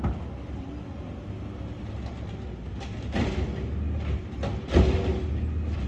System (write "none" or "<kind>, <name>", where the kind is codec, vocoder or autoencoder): none